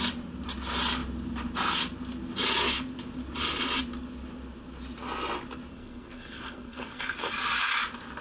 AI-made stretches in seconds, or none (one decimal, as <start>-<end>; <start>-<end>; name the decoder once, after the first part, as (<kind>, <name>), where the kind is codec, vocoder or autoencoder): 5.7-7.3 (codec, SNAC)